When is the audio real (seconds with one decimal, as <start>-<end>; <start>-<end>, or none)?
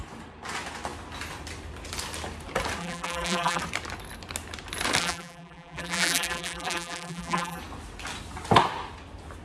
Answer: 0.0-2.8; 3.6-5.0; 7.6-9.4